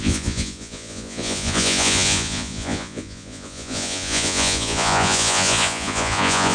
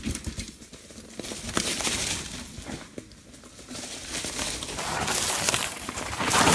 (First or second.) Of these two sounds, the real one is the second